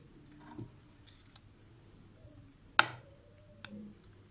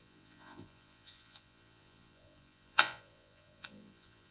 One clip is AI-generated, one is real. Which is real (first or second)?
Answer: first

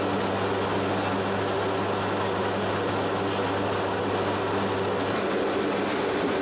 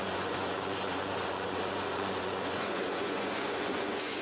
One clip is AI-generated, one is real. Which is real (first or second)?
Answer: first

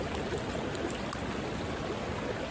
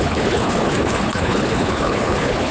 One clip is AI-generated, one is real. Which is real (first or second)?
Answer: first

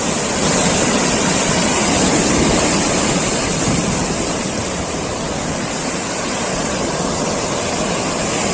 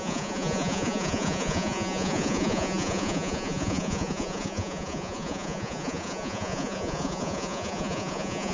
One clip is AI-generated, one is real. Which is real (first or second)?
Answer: first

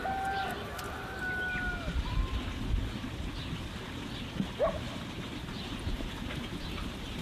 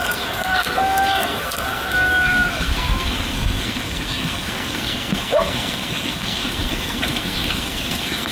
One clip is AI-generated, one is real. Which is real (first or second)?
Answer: first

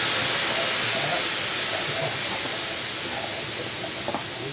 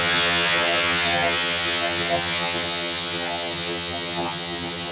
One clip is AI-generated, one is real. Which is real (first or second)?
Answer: first